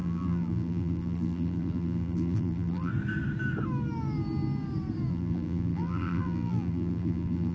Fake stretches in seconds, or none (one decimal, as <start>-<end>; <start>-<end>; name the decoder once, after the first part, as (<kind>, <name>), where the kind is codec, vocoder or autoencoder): 0.0-2.9 (vocoder, BigVGAN v2); 5.1-7.5